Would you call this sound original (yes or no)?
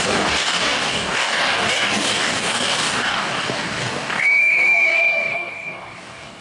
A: no